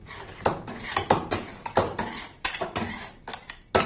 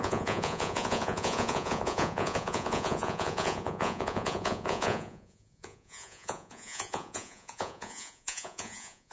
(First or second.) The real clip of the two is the first